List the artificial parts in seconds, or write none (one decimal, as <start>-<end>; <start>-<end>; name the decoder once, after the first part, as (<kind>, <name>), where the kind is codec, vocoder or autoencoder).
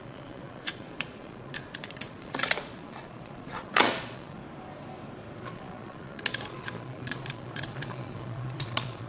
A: 0.0-4.4 (vocoder, Vocos); 5.4-9.1